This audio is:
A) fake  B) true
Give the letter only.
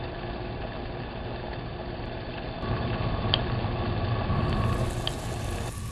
B